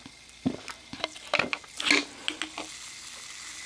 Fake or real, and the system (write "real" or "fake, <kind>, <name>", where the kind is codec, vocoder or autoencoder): real